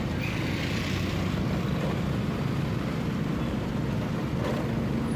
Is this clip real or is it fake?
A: real